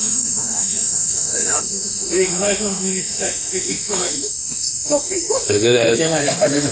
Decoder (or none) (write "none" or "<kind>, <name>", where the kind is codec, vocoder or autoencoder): autoencoder, DAC-VAE